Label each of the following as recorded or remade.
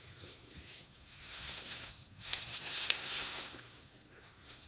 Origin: remade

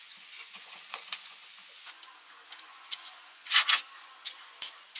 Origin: remade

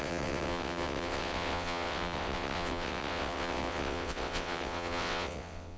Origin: remade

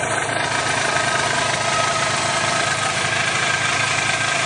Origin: recorded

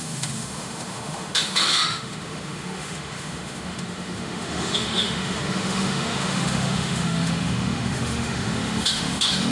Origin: remade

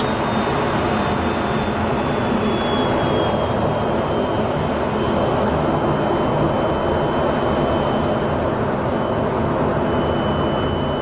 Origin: recorded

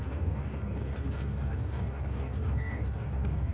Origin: remade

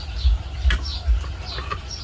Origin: recorded